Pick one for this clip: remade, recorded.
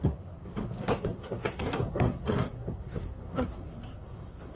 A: remade